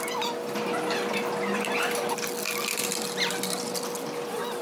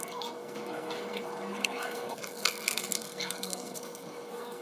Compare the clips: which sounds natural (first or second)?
first